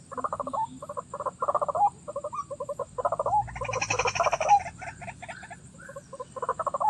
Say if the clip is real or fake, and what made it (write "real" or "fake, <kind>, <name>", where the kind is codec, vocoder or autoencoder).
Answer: real